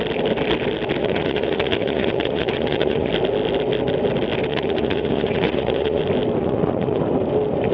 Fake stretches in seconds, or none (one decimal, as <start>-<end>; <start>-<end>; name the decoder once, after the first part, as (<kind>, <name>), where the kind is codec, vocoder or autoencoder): 1.0-3.1 (vocoder, Vocos); 4.5-6.0; 6.4-7.0